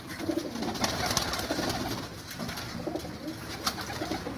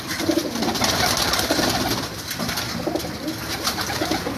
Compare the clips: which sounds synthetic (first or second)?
second